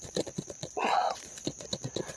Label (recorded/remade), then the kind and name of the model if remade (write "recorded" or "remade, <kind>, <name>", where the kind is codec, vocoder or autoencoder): remade, vocoder, Vocos